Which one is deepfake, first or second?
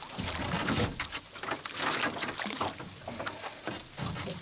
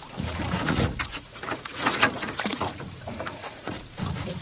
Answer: second